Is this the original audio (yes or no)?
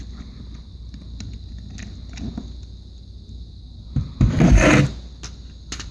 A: yes